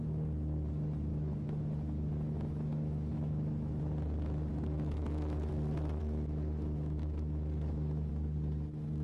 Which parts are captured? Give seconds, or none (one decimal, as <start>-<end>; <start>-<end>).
0.0-1.1; 3.8-4.5; 5.5-6.0; 8.1-9.0